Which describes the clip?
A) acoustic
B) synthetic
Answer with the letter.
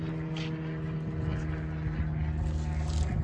A